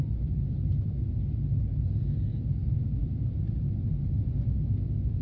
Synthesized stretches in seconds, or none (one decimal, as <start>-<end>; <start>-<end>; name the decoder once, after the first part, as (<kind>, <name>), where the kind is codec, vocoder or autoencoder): none